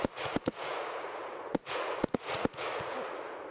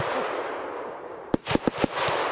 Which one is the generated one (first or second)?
first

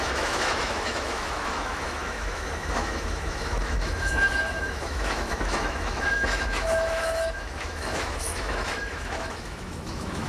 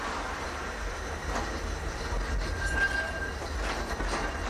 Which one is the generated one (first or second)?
first